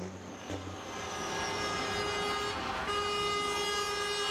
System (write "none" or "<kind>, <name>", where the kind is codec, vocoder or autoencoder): none